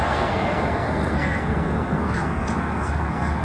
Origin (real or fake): fake